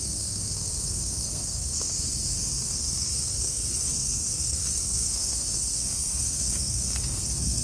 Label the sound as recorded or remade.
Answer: remade